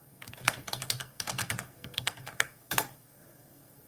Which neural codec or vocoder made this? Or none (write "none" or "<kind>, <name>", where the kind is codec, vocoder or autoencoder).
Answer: codec, SNAC